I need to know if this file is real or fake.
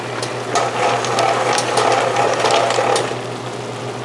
real